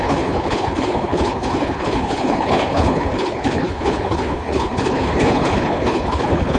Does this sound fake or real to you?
fake